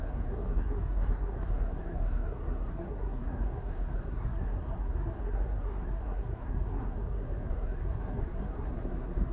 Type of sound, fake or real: fake